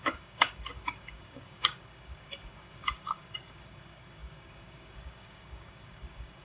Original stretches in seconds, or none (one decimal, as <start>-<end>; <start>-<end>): none